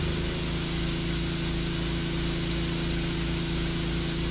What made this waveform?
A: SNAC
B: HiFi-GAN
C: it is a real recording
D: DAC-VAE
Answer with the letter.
C